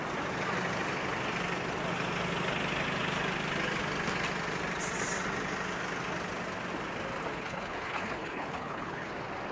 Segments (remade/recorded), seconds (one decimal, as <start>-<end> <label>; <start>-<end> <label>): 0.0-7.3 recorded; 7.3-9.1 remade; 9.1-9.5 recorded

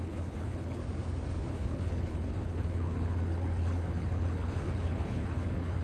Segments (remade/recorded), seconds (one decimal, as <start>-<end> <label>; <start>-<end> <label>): 0.0-0.8 remade; 0.8-1.5 recorded; 1.5-5.8 remade

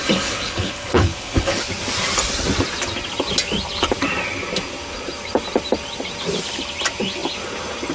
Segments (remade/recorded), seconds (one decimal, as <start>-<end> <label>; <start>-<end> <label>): 0.0-1.6 remade; 1.6-7.9 recorded